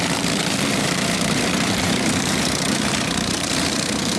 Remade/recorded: remade